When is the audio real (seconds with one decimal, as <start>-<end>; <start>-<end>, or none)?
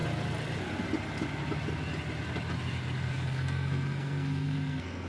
0.0-3.0